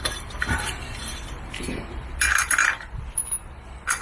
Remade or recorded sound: recorded